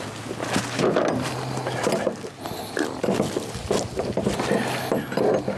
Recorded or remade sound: recorded